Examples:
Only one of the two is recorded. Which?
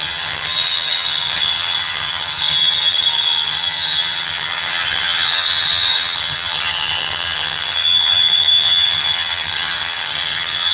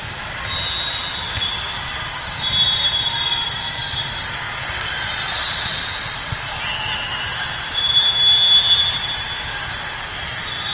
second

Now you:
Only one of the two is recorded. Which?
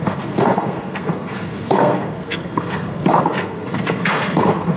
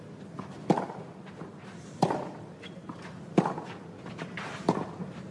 second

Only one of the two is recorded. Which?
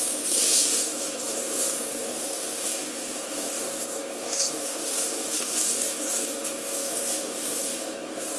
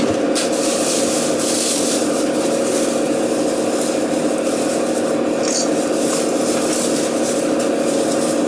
second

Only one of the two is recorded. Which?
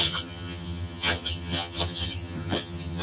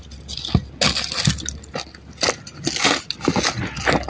second